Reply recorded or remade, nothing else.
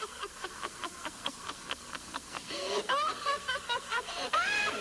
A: remade